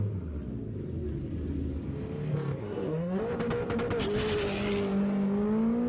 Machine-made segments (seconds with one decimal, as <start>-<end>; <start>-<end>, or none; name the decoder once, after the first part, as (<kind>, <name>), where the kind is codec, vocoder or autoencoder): 2.6-3.2 (codec, SNAC)